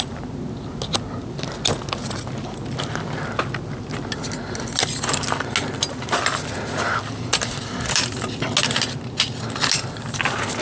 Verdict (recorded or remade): recorded